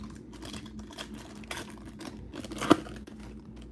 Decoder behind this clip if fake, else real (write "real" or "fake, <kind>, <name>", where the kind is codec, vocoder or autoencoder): real